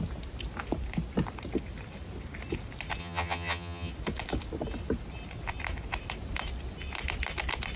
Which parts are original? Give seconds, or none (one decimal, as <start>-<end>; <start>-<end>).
0.0-3.0; 3.9-7.8